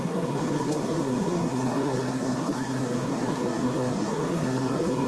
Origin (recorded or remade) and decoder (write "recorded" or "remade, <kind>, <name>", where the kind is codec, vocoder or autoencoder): remade, codec, SNAC